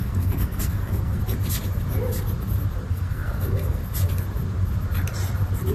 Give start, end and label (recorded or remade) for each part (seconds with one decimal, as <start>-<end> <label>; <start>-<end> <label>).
0.0-1.2 remade; 1.2-2.9 recorded; 2.9-3.8 remade; 3.8-5.7 recorded